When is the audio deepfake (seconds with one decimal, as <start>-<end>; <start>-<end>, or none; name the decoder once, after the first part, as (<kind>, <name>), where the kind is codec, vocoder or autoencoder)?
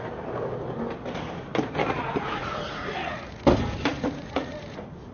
1.8-3.3 (vocoder, Vocos); 3.9-4.6